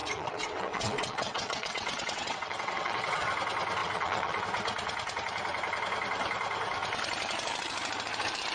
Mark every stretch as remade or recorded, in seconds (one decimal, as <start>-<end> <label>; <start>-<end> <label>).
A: 0.0-3.2 remade; 3.2-3.8 recorded; 3.8-4.4 remade; 4.4-8.5 recorded